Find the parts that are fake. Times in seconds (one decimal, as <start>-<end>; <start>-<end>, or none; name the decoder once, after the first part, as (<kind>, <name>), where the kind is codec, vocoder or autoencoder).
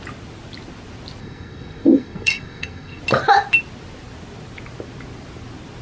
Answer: 1.2-3.0 (codec, SNAC)